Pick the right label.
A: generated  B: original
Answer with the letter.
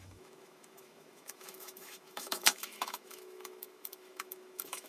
A